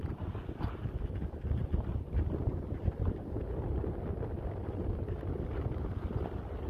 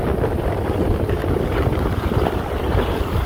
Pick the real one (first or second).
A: first